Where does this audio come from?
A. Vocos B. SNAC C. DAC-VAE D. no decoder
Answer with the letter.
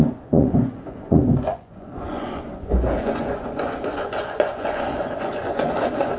A